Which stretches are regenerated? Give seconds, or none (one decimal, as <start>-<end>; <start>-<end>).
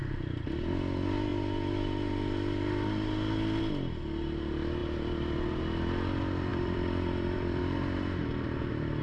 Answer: 6.5-7.6